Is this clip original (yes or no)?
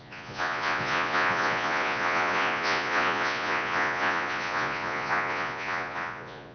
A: no